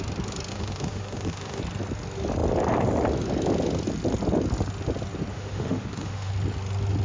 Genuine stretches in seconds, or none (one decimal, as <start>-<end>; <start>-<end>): 0.0-0.5; 1.6-5.3; 6.3-7.0